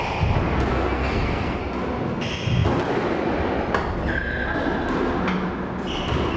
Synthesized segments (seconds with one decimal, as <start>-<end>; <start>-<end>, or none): 0.7-1.6